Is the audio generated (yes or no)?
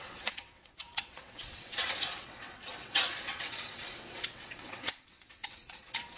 yes